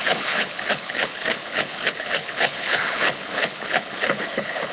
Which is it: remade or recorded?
remade